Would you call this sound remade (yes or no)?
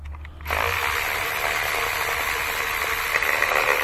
no